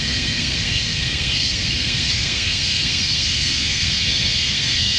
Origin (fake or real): fake